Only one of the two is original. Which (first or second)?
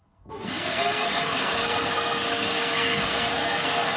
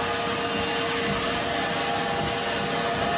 second